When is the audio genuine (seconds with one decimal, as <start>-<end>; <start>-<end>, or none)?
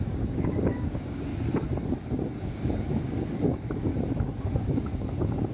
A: 1.3-2.2; 3.9-4.4